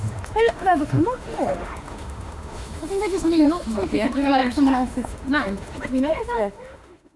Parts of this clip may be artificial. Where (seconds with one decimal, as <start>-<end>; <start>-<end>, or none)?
0.0-7.2